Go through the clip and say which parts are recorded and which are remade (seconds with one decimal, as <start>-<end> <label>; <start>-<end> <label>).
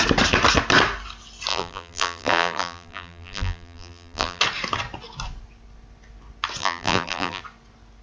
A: 0.0-1.5 recorded; 1.5-4.4 remade; 4.4-6.6 recorded; 6.6-7.4 remade; 7.4-8.0 recorded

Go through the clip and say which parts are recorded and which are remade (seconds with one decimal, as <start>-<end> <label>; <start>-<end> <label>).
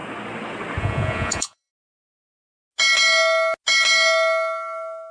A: 0.0-0.8 recorded; 0.8-1.7 remade; 1.7-5.1 recorded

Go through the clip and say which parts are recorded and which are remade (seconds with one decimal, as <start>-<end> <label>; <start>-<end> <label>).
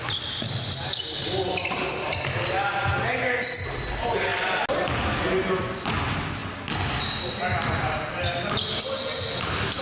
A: 0.0-9.8 recorded